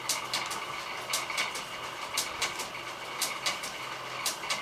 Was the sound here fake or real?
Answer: real